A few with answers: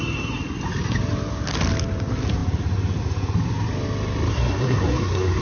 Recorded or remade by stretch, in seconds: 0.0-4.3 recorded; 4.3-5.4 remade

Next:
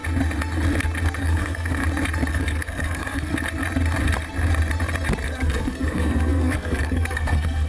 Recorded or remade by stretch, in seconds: 0.0-1.2 recorded; 1.2-1.8 remade; 1.8-2.3 recorded; 2.3-3.3 remade; 3.3-5.3 recorded; 5.3-7.7 remade

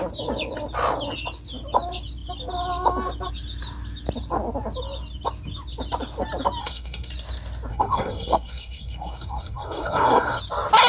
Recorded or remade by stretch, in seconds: 0.0-6.6 recorded; 6.6-7.1 remade; 7.1-7.7 recorded; 7.7-10.4 remade; 10.4-10.9 recorded